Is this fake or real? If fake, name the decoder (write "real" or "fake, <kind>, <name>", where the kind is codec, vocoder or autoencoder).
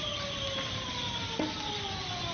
real